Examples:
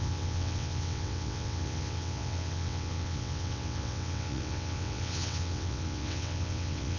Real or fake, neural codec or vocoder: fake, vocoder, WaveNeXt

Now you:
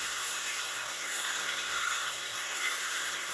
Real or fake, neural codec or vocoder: fake, codec, SNAC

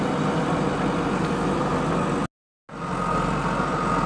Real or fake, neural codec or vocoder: real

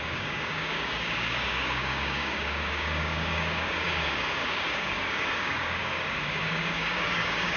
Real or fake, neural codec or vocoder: fake, codec, DAC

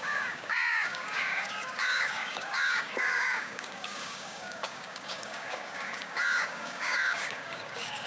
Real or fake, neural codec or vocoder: fake, codec, DAC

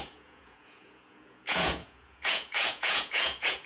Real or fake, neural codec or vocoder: fake, vocoder, Vocos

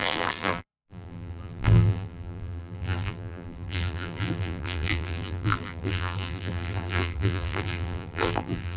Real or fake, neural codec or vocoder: fake, vocoder, BigVGAN v2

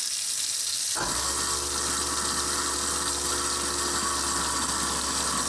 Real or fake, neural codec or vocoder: real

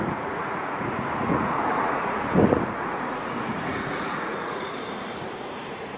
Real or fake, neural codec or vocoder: fake, vocoder, Vocos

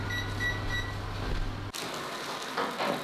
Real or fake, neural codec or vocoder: real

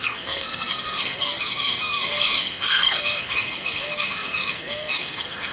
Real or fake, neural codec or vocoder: fake, codec, SNAC